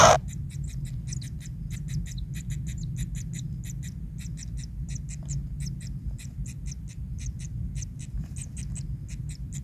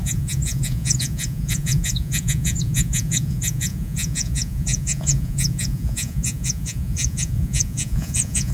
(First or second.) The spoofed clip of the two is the second